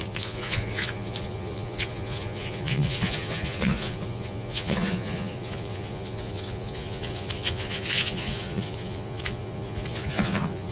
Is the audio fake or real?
fake